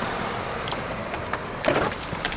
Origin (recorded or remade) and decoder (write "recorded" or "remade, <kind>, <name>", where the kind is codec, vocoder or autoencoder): remade, vocoder, BigVGAN v2